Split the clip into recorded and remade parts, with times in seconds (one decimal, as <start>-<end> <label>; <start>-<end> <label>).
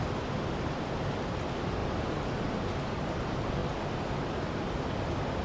0.0-5.4 recorded